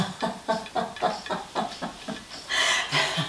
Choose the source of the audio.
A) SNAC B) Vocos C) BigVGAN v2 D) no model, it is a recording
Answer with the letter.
D